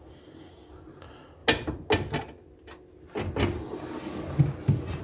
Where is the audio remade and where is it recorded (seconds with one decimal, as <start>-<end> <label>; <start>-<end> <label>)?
0.0-5.0 recorded